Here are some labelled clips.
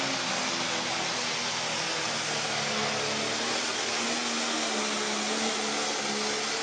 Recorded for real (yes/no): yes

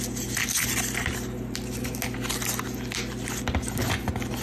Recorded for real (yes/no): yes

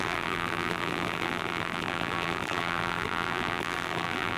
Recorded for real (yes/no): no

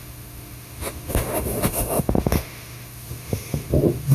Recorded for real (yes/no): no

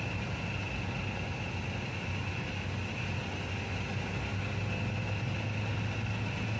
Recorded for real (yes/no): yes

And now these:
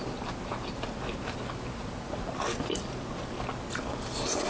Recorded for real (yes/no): yes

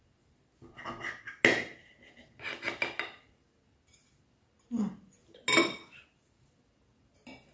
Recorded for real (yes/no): yes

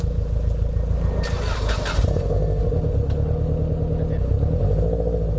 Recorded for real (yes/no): yes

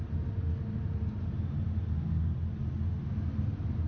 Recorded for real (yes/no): yes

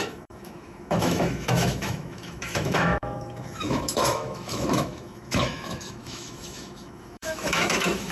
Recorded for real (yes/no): no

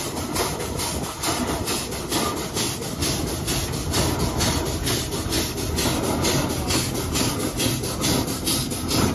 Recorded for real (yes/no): yes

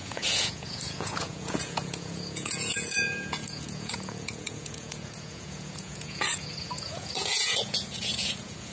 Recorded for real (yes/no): no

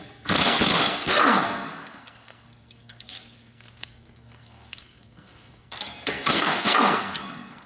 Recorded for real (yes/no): no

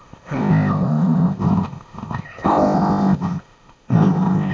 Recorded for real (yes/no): no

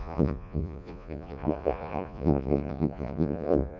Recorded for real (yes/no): no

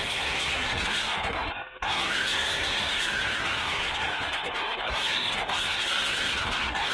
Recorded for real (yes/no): no